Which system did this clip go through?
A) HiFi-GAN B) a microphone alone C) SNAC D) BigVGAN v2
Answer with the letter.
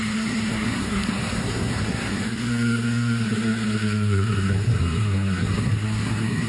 C